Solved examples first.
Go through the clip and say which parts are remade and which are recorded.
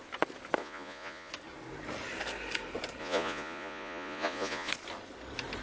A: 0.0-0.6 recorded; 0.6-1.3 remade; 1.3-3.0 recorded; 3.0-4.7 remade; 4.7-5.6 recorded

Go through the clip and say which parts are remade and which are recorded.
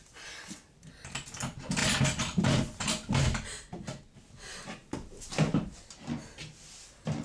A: 0.0-7.2 recorded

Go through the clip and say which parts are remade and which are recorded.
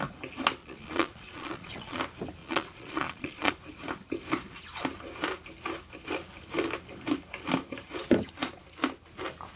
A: 0.0-0.6 recorded; 0.6-2.0 remade; 2.0-2.4 recorded; 2.4-3.5 remade; 3.5-9.6 recorded